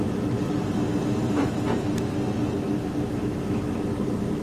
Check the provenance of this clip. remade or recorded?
recorded